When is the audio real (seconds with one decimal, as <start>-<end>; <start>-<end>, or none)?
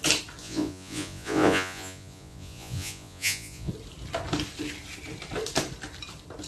0.0-0.4; 3.7-6.5